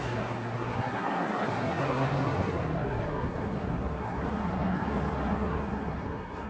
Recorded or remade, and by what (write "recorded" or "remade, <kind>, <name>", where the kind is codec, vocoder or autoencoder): remade, codec, SNAC